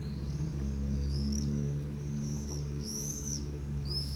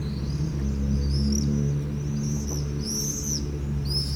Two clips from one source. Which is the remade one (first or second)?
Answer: first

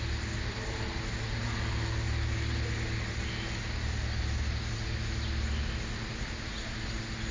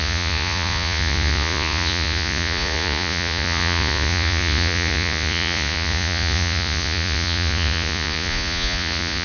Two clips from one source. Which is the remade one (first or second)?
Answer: second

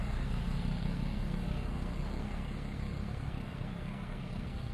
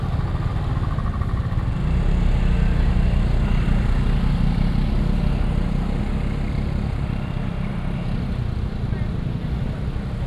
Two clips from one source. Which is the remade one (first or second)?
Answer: first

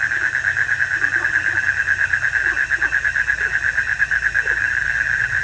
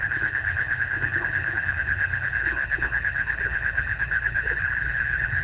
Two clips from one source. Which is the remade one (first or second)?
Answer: second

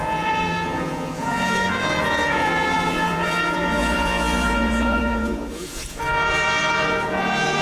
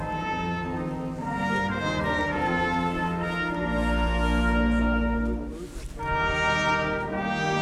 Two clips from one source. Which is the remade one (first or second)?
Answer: first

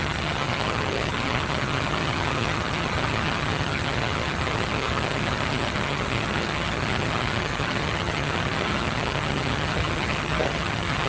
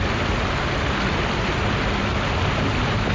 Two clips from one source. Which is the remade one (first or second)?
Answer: first